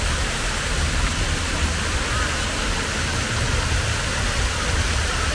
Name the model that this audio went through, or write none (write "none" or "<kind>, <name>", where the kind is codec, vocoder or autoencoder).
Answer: none